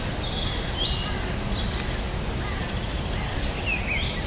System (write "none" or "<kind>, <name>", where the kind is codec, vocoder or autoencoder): none